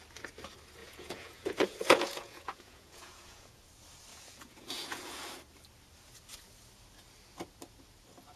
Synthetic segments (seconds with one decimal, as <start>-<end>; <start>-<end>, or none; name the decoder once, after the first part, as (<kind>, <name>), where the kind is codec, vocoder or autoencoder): 0.8-3.6 (vocoder, Vocos); 4.1-5.3